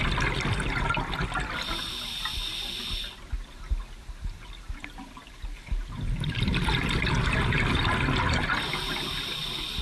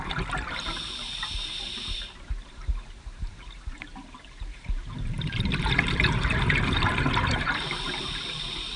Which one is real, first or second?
first